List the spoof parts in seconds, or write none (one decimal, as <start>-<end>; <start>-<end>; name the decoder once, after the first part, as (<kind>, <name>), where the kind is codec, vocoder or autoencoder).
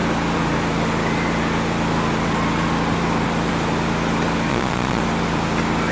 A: 4.5-5.0 (vocoder, Vocos)